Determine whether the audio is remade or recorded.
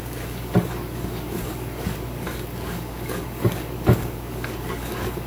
remade